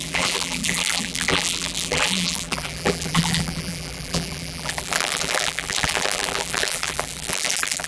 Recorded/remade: remade